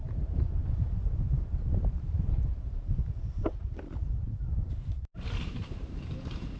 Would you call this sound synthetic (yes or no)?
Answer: yes